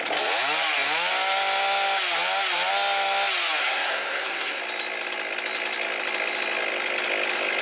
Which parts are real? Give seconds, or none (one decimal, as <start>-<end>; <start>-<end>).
0.0-3.6; 4.6-7.6